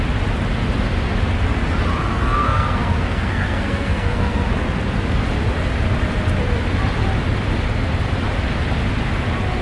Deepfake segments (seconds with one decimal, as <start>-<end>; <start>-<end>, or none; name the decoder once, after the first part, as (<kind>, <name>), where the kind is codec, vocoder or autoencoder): 2.1-4.5 (codec, SNAC)